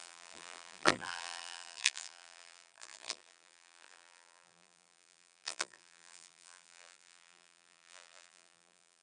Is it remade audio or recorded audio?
remade